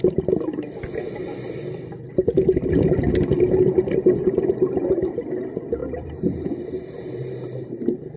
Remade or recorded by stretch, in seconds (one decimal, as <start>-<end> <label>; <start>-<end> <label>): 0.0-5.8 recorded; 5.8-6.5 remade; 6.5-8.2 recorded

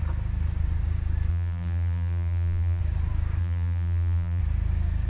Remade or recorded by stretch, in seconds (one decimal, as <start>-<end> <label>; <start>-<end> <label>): 0.0-1.3 recorded; 1.3-2.8 remade; 2.8-3.4 recorded; 3.4-4.4 remade; 4.4-5.1 recorded

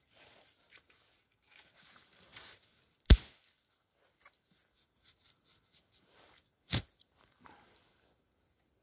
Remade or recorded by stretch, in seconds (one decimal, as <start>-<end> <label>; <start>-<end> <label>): 0.0-8.8 recorded

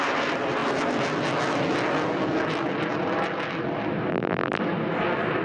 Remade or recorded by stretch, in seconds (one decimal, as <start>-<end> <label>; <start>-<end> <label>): 0.0-4.1 recorded; 4.1-4.6 remade; 4.6-5.4 recorded